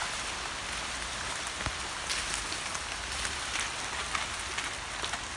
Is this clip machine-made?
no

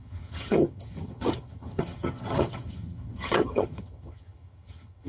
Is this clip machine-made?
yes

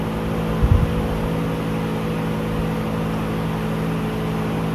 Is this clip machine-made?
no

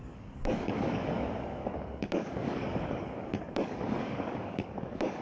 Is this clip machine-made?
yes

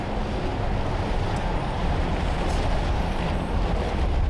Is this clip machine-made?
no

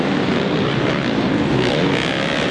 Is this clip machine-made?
no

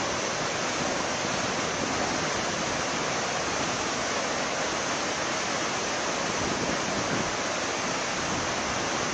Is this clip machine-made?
no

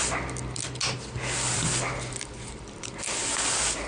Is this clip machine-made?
no